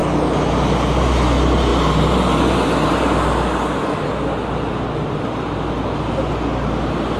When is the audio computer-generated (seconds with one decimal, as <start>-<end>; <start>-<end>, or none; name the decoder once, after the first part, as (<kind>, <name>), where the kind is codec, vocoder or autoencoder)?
none